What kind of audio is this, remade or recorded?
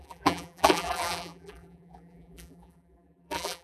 remade